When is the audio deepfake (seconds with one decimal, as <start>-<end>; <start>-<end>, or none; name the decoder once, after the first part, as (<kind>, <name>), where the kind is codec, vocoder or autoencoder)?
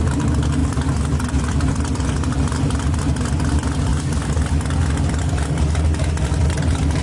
none